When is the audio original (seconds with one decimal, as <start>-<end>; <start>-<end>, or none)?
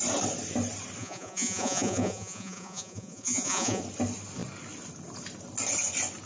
0.0-1.0; 3.8-6.3